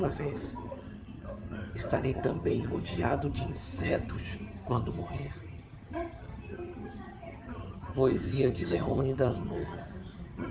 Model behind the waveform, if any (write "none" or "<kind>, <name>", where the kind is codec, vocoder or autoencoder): vocoder, HiFi-GAN